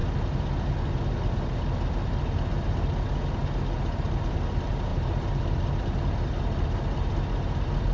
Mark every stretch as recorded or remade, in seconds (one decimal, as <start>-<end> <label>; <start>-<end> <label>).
0.0-7.9 recorded